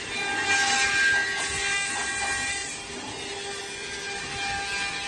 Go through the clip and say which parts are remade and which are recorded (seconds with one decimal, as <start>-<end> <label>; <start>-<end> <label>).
0.0-5.1 recorded